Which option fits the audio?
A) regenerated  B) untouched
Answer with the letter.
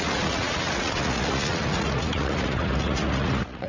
A